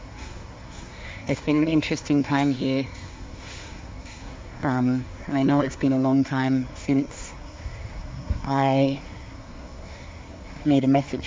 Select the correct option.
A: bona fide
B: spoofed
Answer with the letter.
B